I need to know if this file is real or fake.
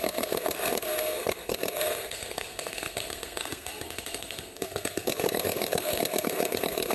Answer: fake